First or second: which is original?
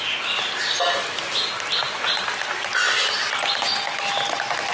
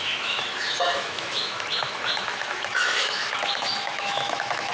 first